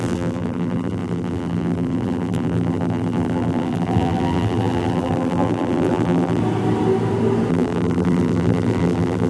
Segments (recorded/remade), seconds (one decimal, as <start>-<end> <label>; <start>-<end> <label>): 0.0-6.4 remade; 6.4-7.5 recorded; 7.5-9.3 remade